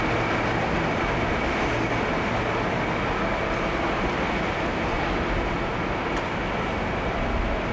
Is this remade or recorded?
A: recorded